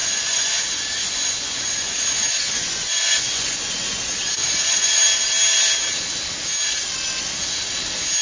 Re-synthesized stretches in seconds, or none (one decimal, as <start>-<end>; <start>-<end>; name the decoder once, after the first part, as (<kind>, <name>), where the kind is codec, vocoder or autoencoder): 0.0-0.6 (vocoder, Vocos); 1.0-4.0; 4.4-5.0